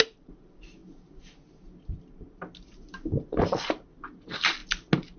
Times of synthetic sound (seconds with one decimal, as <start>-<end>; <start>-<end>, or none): none